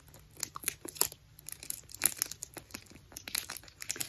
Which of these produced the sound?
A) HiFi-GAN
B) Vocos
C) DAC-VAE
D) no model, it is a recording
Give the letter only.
D